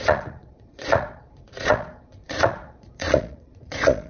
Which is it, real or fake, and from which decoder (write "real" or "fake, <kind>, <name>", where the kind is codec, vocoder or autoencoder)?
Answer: fake, vocoder, Vocos